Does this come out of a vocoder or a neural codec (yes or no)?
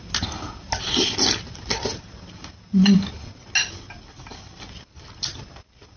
no